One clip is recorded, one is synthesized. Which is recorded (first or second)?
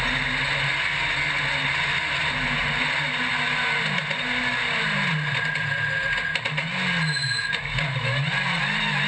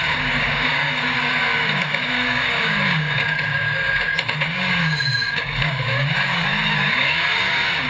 first